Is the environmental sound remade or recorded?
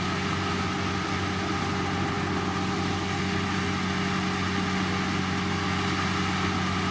recorded